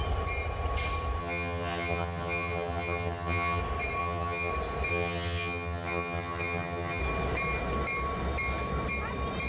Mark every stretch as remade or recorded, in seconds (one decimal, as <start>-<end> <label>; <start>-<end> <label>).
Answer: 0.0-1.2 recorded; 1.2-3.6 remade; 3.6-4.0 recorded; 4.0-4.5 remade; 4.5-4.9 recorded; 4.9-7.0 remade; 7.0-9.5 recorded